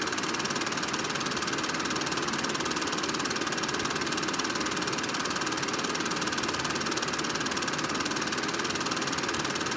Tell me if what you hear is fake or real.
real